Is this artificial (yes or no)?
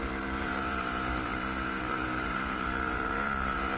yes